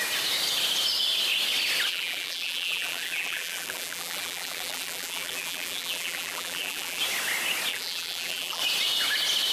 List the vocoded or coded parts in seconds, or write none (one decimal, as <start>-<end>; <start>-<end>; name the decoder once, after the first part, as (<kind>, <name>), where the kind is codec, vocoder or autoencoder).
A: 1.9-7.0 (vocoder, BigVGAN v2); 7.7-8.6